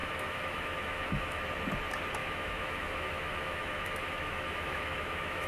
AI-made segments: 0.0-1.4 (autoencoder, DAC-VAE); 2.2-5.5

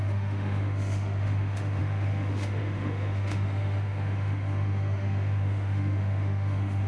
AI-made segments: 0.0-6.9 (autoencoder, DAC-VAE)

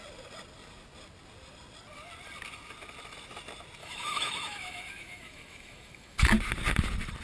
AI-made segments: 3.8-6.2 (autoencoder, DAC-VAE)

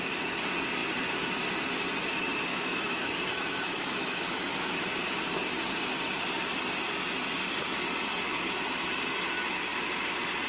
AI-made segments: 2.5-5.0 (autoencoder, DAC-VAE)

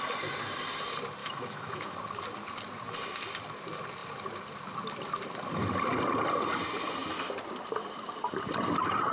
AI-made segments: 1.2-2.0 (autoencoder, DAC-VAE)

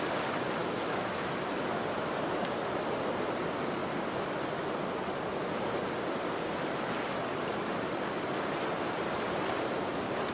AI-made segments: 0.6-1.3 (autoencoder, DAC-VAE)